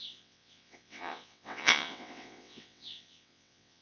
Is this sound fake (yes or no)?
yes